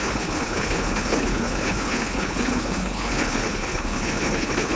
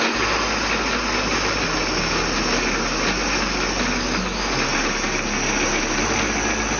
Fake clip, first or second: first